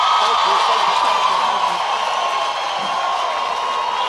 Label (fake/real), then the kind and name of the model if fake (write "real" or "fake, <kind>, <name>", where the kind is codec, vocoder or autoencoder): real